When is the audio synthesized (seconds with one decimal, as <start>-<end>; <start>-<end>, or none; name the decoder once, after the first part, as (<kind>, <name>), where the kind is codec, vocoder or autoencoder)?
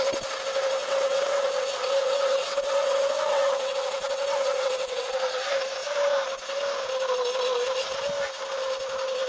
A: 0.8-5.1 (vocoder, WaveNeXt)